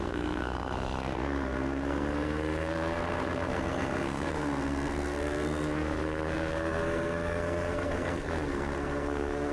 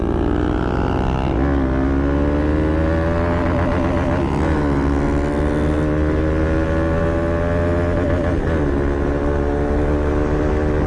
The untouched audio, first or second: second